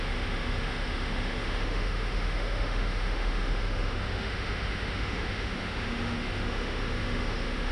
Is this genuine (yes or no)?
no